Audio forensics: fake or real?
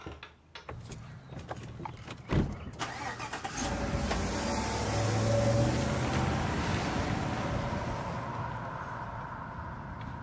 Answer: real